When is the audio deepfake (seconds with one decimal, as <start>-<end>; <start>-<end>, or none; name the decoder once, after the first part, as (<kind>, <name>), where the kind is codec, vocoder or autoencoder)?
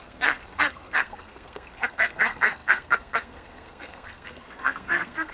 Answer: 0.0-5.3 (codec, SNAC)